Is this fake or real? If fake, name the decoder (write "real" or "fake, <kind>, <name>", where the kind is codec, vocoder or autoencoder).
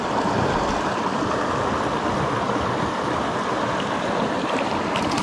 real